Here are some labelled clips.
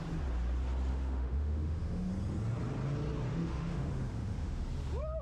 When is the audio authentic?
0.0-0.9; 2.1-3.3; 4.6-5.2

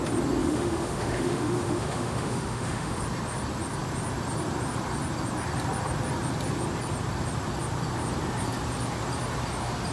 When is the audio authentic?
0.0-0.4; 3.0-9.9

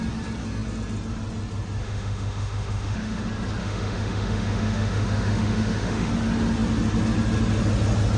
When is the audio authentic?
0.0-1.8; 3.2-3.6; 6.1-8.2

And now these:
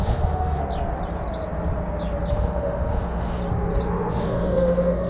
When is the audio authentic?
0.6-2.3; 3.4-4.1

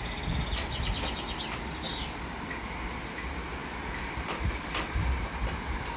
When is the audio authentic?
0.0-6.0